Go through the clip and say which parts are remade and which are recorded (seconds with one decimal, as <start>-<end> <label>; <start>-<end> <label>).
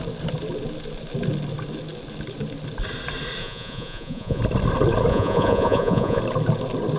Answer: 0.0-3.4 recorded; 3.4-4.4 remade; 4.4-5.1 recorded; 5.1-6.2 remade; 6.2-7.0 recorded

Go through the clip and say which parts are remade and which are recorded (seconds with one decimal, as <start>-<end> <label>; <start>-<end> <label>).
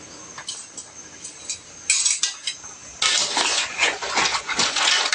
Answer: 0.0-3.5 recorded; 3.5-5.1 remade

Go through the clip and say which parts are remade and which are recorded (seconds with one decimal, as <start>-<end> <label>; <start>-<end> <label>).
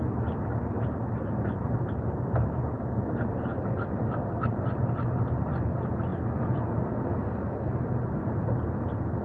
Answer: 0.0-9.2 recorded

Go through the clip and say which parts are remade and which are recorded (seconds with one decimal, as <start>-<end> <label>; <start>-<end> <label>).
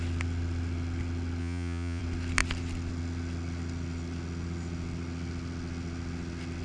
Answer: 0.0-1.4 recorded; 1.4-2.0 remade; 2.0-6.6 recorded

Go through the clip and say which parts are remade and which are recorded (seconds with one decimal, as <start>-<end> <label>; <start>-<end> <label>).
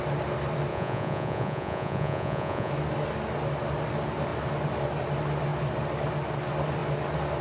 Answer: 0.0-0.7 recorded; 0.7-2.7 remade; 2.7-7.4 recorded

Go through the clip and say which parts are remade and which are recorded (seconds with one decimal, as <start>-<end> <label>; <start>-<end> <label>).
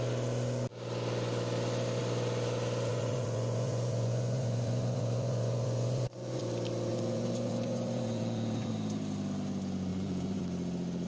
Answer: 0.0-2.9 recorded; 2.9-6.4 remade; 6.4-6.9 recorded; 6.9-8.7 remade; 8.7-9.9 recorded; 9.9-10.4 remade; 10.4-11.1 recorded